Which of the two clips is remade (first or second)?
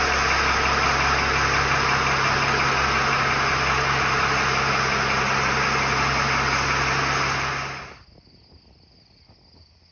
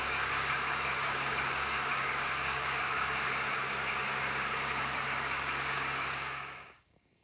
second